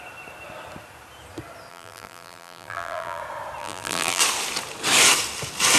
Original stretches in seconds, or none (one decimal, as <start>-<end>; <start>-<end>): 0.0-1.7; 3.2-3.6; 4.2-5.8